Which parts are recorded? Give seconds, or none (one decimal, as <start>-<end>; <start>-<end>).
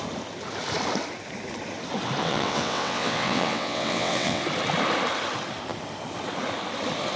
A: 0.0-2.2; 4.4-7.2